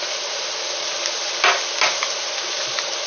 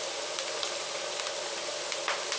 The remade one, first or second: second